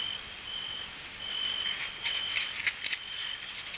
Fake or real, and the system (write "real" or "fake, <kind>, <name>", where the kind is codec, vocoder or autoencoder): real